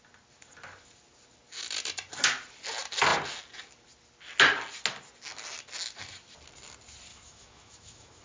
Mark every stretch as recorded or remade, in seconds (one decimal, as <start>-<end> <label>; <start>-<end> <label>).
0.0-7.1 recorded; 7.1-8.2 remade